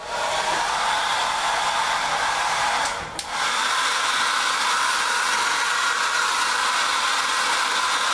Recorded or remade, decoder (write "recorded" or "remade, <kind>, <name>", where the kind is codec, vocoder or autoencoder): recorded